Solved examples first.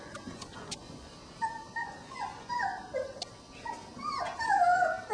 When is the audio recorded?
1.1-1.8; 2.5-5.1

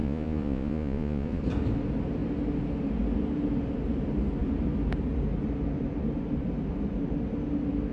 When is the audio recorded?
1.4-7.9